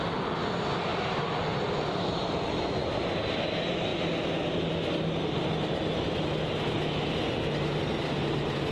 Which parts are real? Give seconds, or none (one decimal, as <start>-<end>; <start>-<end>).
0.0-8.7